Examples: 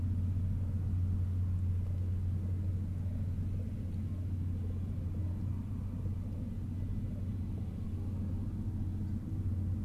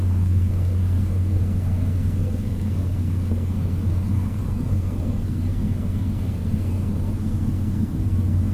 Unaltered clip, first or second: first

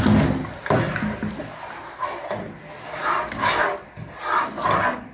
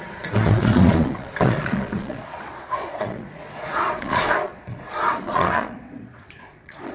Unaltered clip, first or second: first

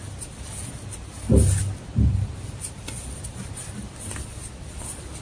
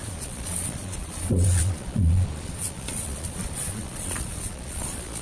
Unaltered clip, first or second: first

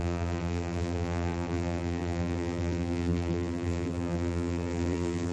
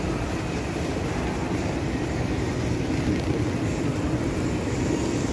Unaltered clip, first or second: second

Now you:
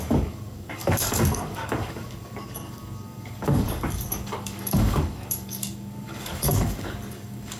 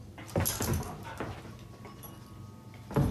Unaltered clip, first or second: second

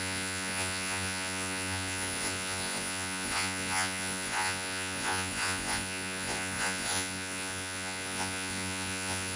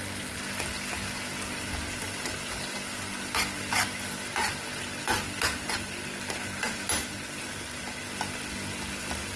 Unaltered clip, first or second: second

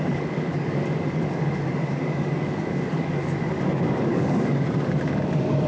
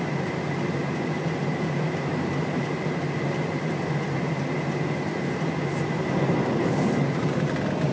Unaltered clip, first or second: second